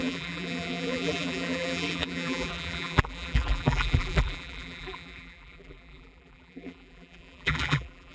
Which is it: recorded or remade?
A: remade